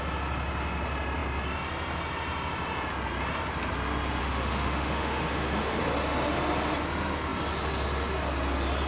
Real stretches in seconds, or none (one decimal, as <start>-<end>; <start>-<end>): 0.0-4.2; 5.8-8.9